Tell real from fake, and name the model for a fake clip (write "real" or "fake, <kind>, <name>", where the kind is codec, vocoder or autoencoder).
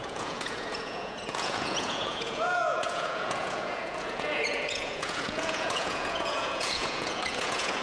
fake, vocoder, Vocos